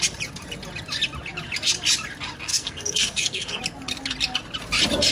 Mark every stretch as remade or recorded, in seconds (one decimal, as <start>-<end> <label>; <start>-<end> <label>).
0.0-2.5 recorded; 2.5-3.6 remade; 3.6-5.1 recorded